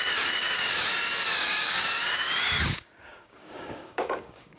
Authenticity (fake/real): fake